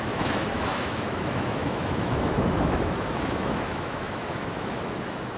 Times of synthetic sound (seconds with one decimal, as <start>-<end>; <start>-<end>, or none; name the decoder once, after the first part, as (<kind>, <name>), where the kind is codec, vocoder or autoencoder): 0.0-5.4 (autoencoder, DAC-VAE)